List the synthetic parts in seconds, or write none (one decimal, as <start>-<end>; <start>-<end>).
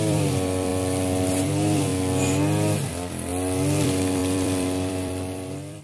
0.0-1.9; 2.9-3.3; 3.8-5.8